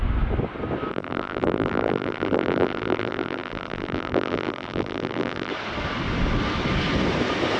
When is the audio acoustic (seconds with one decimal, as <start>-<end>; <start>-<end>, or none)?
0.0-0.9; 5.5-7.6